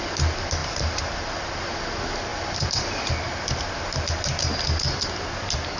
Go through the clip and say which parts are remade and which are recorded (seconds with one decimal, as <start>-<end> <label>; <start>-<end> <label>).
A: 0.0-0.6 recorded; 0.6-1.2 remade; 1.2-2.3 recorded; 2.3-3.1 remade; 3.1-5.8 recorded